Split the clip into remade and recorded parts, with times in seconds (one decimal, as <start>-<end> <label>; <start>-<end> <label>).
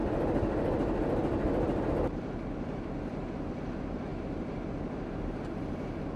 0.0-6.2 recorded